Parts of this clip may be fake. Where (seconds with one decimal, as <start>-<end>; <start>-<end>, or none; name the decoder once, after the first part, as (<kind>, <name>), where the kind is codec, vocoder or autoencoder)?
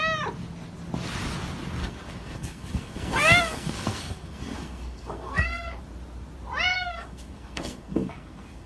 1.8-5.8 (codec, SNAC); 6.7-8.7